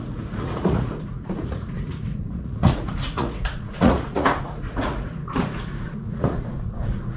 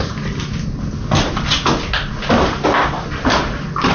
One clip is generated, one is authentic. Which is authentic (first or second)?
second